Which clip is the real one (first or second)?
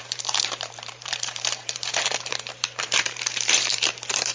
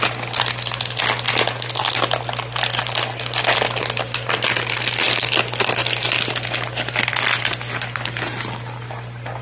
second